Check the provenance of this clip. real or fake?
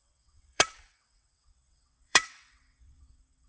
fake